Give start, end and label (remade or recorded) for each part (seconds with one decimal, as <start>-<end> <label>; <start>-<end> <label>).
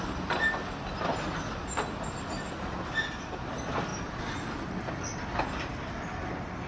0.0-3.9 recorded; 3.9-4.7 remade; 4.7-6.7 recorded